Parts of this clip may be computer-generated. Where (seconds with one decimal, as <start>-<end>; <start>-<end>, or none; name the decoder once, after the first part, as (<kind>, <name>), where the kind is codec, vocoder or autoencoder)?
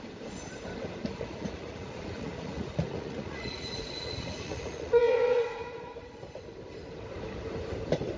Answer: 1.1-6.0 (vocoder, Vocos)